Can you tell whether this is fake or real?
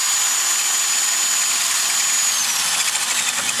real